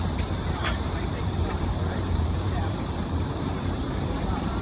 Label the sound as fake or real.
fake